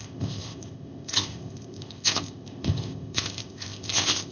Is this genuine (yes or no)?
no